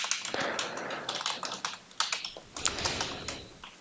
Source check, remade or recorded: recorded